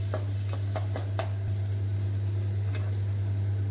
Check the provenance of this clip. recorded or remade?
recorded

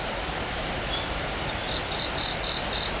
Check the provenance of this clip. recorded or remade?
recorded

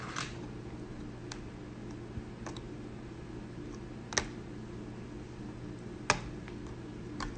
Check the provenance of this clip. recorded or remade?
recorded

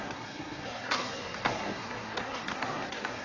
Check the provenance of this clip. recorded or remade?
remade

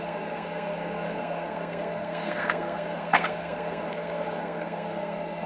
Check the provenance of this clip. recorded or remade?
remade